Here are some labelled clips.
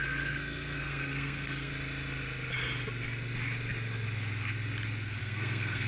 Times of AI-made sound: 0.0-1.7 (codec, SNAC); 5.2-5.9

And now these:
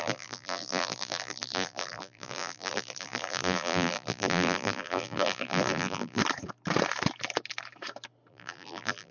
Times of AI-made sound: 0.0-6.2 (vocoder, BigVGAN v2); 8.3-9.1

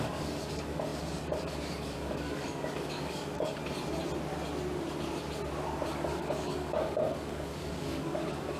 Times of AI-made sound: 0.0-3.6 (codec, DAC); 5.9-8.6

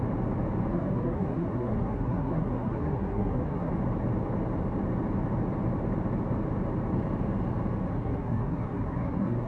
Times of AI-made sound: 0.7-3.7 (codec, SNAC); 7.9-9.5

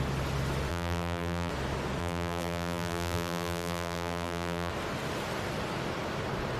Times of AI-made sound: 0.7-1.5 (vocoder, BigVGAN v2); 2.0-4.7